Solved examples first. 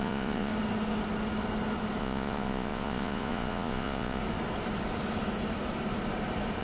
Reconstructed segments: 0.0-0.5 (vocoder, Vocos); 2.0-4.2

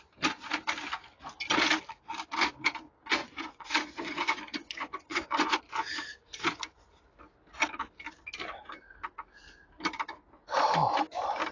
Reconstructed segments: 3.2-5.6 (vocoder, Vocos)